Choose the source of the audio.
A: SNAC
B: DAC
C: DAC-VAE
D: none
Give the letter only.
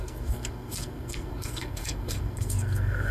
A